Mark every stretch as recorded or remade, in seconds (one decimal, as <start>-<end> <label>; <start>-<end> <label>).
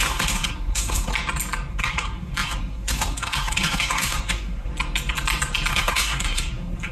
0.0-1.1 remade; 1.1-1.7 recorded; 1.7-4.7 remade; 4.7-5.7 recorded; 5.7-6.9 remade